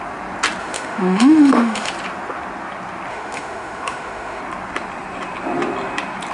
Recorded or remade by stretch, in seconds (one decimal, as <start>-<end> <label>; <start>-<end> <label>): 0.0-0.6 recorded; 0.6-1.9 remade; 1.9-3.1 recorded; 3.1-4.4 remade; 4.4-6.3 recorded